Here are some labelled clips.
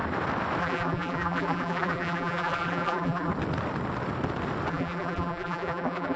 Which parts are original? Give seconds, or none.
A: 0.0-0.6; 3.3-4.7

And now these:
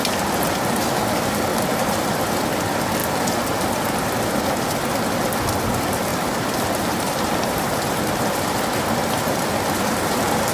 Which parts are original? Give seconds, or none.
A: 0.0-1.5; 2.3-6.1; 8.4-10.5

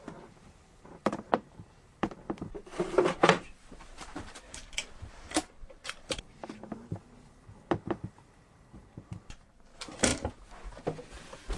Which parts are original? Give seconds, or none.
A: 2.2-2.8; 7.0-8.1; 10.1-11.6

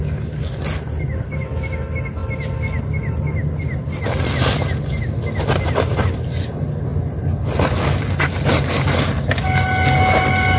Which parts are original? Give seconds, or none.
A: 0.0-10.6

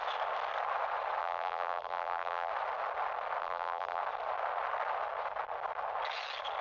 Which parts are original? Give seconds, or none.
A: 0.0-1.2; 2.5-3.4; 4.0-6.6